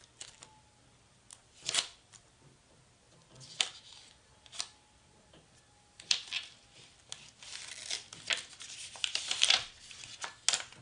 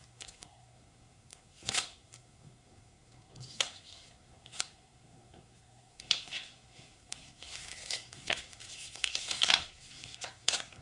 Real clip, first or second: first